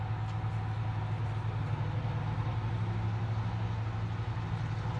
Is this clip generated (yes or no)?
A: no